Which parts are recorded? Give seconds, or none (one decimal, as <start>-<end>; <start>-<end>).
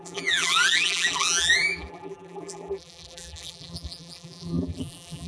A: none